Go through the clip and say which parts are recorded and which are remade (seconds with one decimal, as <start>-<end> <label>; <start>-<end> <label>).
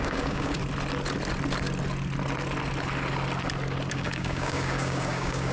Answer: 0.0-0.6 remade; 0.6-3.9 recorded; 3.9-5.5 remade